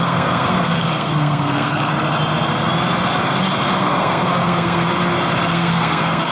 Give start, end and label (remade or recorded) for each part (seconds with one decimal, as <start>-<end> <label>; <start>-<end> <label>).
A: 0.0-1.9 remade; 1.9-3.8 recorded; 3.8-4.9 remade; 4.9-5.5 recorded; 5.5-6.3 remade